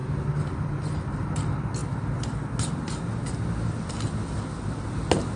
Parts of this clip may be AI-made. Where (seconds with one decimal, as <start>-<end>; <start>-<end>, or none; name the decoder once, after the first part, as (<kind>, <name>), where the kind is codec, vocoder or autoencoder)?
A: none